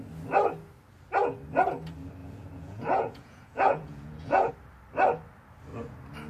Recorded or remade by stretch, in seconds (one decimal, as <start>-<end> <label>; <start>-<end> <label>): 0.0-2.2 recorded; 2.2-4.5 remade; 4.5-6.3 recorded